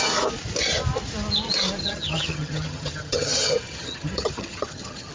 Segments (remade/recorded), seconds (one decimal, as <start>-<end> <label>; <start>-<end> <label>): 0.0-1.8 recorded; 1.8-5.1 remade